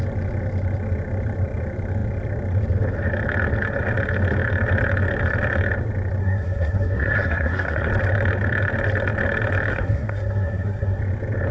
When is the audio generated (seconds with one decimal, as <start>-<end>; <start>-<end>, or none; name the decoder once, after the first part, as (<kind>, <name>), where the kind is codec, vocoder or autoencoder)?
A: 6.2-7.9 (codec, SNAC); 9.7-11.0